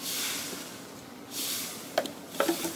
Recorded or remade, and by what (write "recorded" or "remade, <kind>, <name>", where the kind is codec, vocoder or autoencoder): recorded